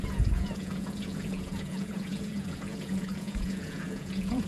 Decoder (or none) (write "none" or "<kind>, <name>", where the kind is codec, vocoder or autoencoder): vocoder, Vocos